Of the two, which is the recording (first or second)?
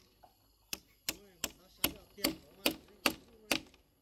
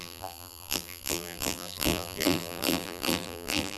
first